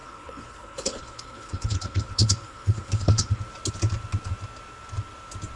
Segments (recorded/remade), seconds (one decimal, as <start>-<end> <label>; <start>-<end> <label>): 0.0-3.4 remade; 3.4-5.6 recorded